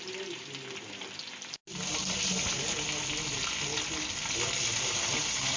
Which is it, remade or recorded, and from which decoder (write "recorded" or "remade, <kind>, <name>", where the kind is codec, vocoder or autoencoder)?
recorded